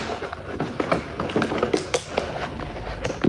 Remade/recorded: recorded